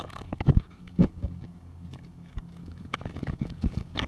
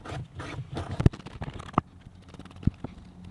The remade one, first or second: first